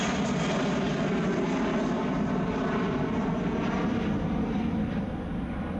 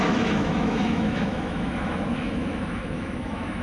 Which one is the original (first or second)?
first